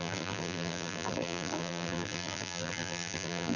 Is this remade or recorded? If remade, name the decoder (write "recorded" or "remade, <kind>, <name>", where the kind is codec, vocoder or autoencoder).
remade, vocoder, BigVGAN v2